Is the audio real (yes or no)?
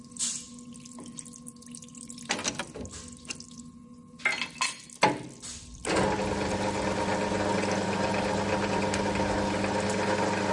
yes